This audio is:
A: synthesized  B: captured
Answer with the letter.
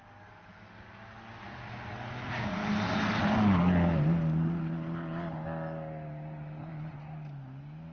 B